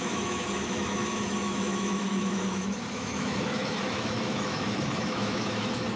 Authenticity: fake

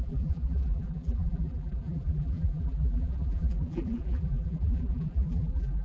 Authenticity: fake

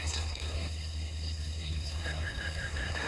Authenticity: fake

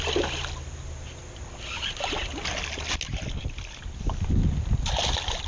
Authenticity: real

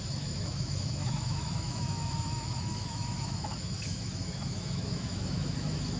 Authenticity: fake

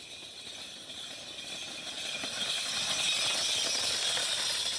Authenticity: real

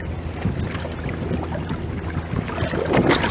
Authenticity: real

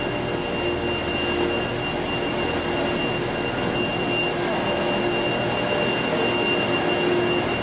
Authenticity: real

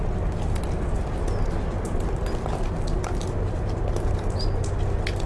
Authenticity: real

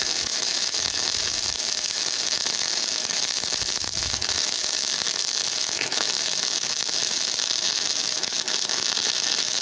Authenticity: fake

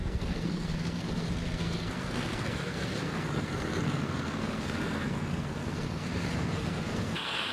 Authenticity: fake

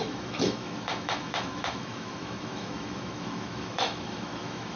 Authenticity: fake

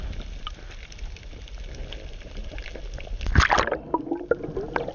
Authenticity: real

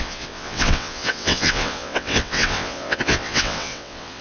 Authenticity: fake